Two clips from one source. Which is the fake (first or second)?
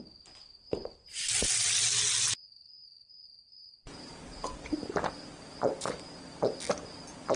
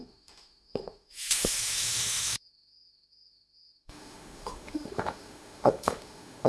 second